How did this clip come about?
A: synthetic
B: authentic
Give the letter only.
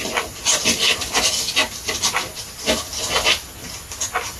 B